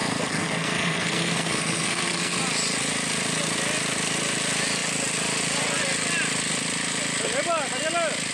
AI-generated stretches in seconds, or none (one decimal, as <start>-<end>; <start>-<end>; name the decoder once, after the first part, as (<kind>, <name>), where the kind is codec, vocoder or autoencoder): 0.0-2.4 (codec, SNAC)